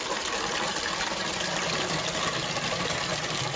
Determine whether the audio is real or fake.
real